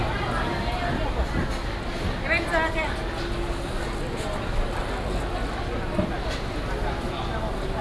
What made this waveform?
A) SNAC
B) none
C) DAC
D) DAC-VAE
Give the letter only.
B